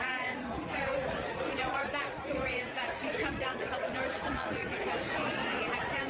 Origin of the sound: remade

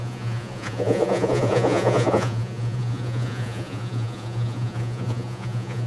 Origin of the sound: remade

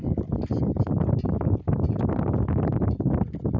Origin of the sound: recorded